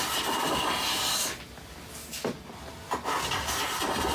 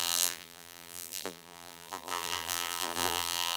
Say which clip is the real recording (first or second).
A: first